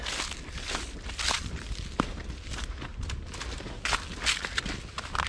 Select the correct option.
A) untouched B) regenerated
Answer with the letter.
A